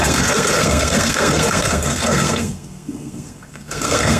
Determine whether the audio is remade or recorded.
remade